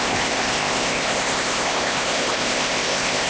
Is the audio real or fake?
fake